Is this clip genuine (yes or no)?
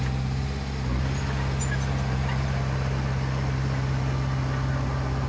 yes